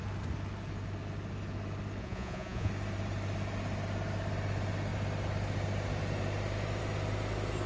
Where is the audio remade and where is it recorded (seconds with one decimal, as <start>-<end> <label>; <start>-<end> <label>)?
0.0-2.0 recorded; 2.0-2.7 remade; 2.7-7.7 recorded